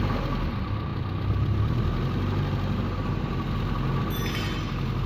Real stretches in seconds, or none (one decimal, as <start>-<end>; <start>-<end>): 0.0-5.1